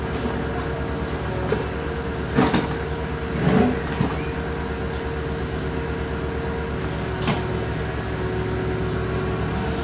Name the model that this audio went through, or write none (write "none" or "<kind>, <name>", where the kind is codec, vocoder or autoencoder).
none